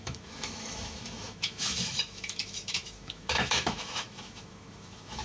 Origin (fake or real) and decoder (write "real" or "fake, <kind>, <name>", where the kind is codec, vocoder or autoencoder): fake, autoencoder, DAC-VAE